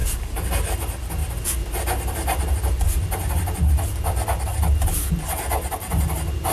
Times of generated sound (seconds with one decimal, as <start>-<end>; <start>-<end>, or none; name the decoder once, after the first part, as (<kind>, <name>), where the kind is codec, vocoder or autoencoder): 0.0-0.5 (codec, DAC)